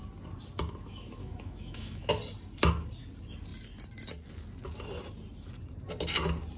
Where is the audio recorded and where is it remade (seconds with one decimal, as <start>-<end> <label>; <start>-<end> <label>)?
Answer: 0.0-1.2 recorded; 1.2-2.1 remade; 2.1-6.6 recorded